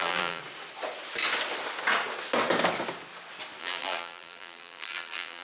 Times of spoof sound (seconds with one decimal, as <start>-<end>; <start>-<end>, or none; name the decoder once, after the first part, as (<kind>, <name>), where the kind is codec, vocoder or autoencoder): 0.0-0.4 (vocoder, BigVGAN v2); 3.6-5.4